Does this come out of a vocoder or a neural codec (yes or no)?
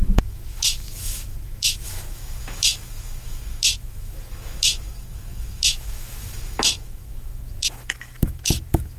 yes